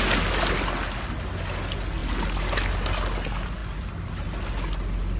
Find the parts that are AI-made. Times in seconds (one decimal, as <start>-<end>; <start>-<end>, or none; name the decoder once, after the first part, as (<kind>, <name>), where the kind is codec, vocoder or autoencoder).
none